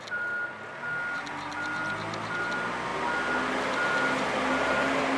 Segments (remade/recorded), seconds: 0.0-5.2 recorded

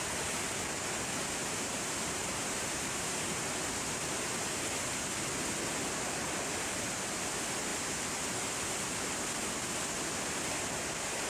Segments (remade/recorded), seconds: 0.0-1.4 recorded; 1.4-3.5 remade; 3.5-7.7 recorded; 7.7-8.3 remade; 8.3-11.3 recorded